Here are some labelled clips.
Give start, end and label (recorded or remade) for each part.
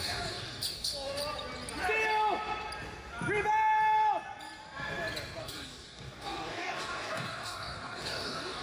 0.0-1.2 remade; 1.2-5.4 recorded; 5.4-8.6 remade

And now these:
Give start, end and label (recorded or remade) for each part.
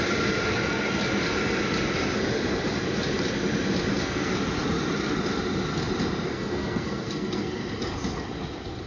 0.0-3.9 recorded; 3.9-4.4 remade; 4.4-6.3 recorded; 6.3-7.5 remade; 7.5-8.9 recorded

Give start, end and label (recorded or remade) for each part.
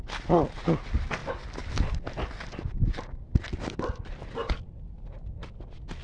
0.0-6.0 recorded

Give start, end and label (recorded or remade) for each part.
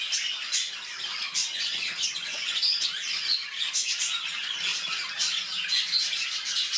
0.0-1.4 recorded; 1.4-2.9 remade; 2.9-6.8 recorded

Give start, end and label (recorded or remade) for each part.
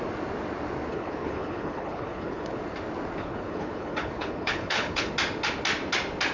0.0-0.9 recorded; 0.9-2.6 remade; 2.6-3.2 recorded; 3.2-5.1 remade; 5.1-6.3 recorded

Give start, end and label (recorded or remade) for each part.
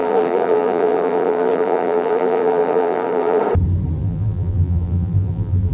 0.0-3.4 remade; 3.4-4.0 recorded; 4.0-5.7 remade